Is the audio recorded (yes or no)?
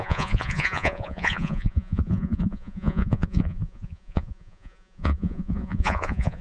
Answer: no